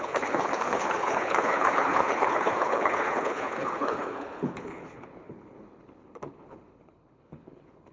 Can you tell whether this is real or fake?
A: fake